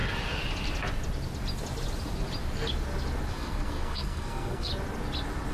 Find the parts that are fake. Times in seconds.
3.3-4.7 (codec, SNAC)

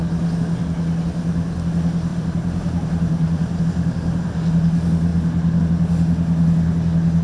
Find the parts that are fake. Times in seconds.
2.1-3.6 (vocoder, BigVGAN v2); 5.1-5.6

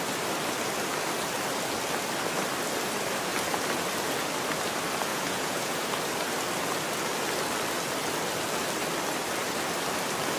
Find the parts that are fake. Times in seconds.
5.1-5.9 (vocoder, Vocos)

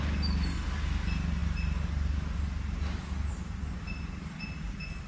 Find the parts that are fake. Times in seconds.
none